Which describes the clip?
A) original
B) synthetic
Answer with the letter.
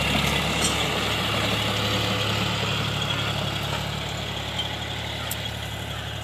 A